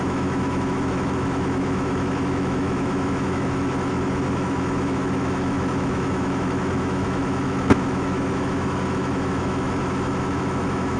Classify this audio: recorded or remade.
remade